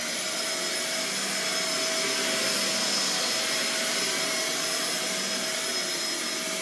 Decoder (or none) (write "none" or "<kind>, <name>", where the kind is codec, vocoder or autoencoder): none